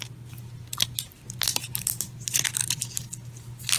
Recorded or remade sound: recorded